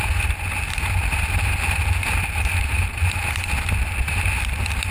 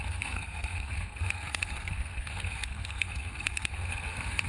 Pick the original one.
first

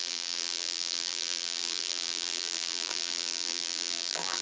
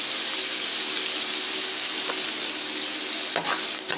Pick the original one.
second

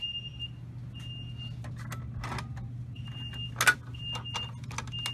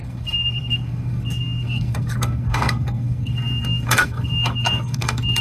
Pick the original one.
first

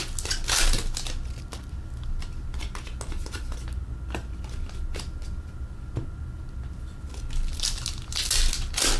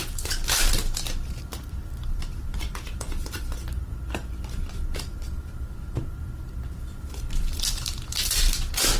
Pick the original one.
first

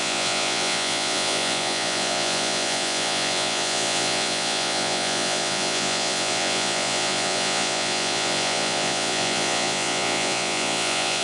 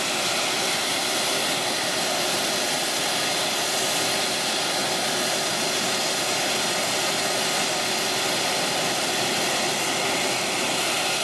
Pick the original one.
second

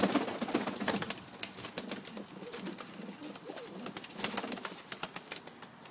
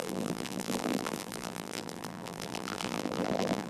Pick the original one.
first